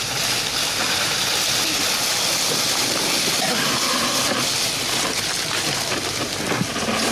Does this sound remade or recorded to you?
recorded